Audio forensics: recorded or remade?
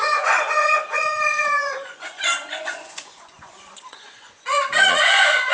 remade